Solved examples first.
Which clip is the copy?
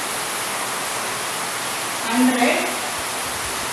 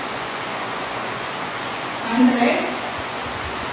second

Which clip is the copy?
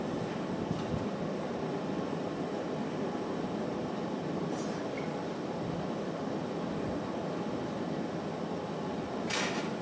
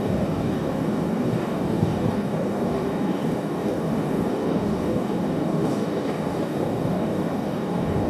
second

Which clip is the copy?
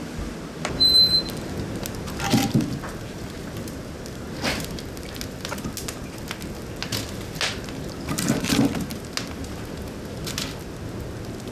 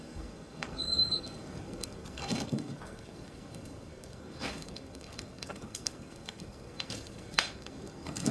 second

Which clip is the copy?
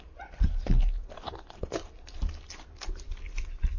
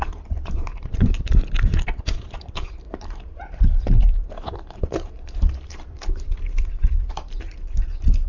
second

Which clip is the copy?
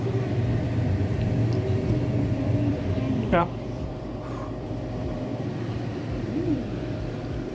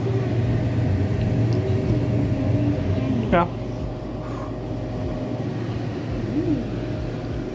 first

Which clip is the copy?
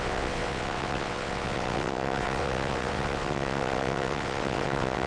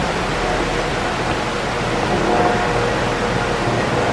first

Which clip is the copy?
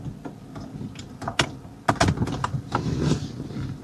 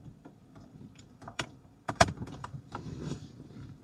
second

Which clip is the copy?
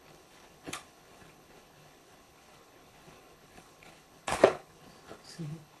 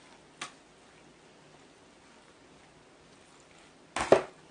first